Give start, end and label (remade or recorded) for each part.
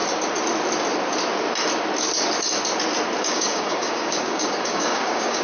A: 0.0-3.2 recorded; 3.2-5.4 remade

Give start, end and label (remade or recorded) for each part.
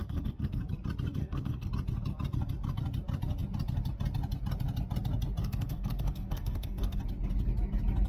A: 0.0-0.6 remade; 0.6-1.2 recorded; 1.2-1.7 remade; 1.7-5.4 recorded; 5.4-7.0 remade; 7.0-8.1 recorded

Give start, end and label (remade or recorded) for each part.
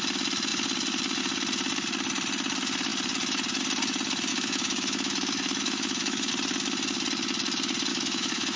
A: 0.0-4.3 recorded; 4.3-6.3 remade; 6.3-7.9 recorded; 7.9-8.6 remade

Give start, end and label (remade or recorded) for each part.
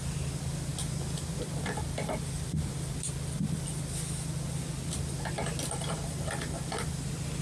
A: 0.0-7.4 recorded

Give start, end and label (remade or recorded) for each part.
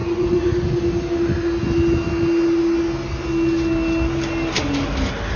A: 0.0-0.8 remade; 0.8-5.4 recorded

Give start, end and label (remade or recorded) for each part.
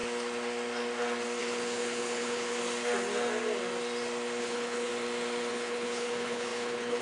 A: 0.0-1.4 recorded; 1.4-2.6 remade; 2.6-4.4 recorded; 4.4-4.9 remade; 4.9-5.5 recorded; 5.5-7.0 remade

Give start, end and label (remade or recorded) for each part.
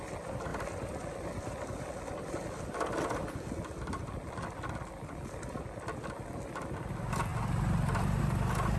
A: 0.0-0.5 recorded; 0.5-1.9 remade; 1.9-8.8 recorded